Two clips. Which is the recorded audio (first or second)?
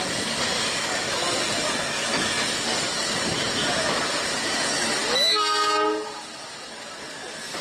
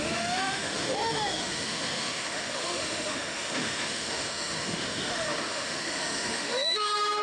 first